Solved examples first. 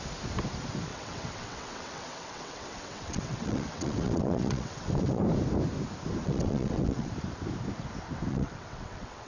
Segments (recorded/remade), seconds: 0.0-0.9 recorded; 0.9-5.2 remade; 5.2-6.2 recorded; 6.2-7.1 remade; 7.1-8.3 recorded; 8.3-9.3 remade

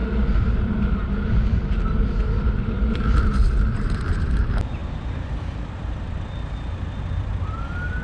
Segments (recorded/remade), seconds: 0.0-8.0 recorded

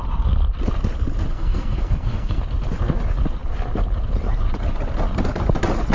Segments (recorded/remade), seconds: 0.0-1.3 recorded; 1.3-2.4 remade; 2.4-5.9 recorded

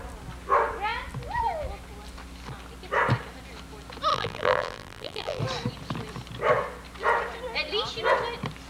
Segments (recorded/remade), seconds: 0.0-4.1 recorded; 4.1-5.4 remade; 5.4-8.7 recorded

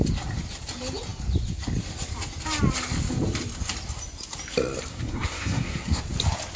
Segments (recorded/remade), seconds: 0.0-4.9 recorded; 4.9-6.0 remade; 6.0-6.6 recorded

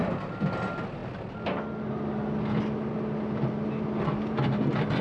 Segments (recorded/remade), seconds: 0.0-5.0 recorded

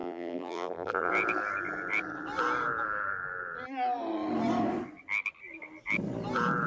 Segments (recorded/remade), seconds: 0.0-1.1 remade; 1.1-6.7 recorded